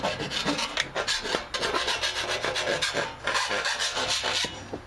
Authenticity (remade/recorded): recorded